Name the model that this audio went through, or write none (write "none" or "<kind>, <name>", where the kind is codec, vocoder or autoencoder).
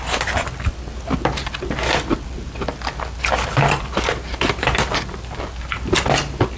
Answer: none